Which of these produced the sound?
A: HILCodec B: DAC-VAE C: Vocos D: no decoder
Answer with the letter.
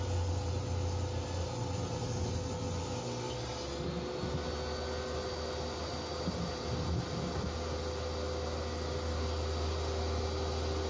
D